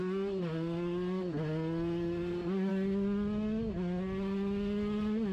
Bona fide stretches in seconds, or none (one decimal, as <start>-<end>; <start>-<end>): 0.0-5.3